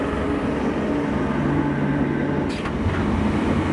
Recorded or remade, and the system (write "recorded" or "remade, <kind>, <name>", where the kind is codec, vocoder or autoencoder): recorded